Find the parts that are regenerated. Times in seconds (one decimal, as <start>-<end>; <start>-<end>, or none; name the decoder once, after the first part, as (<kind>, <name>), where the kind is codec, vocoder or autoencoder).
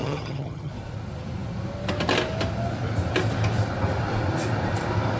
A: 0.0-0.7 (vocoder, HiFi-GAN)